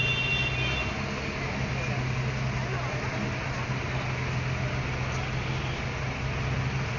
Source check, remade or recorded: recorded